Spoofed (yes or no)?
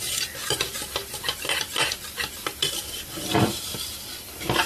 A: no